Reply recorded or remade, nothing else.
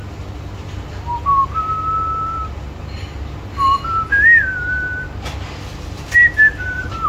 recorded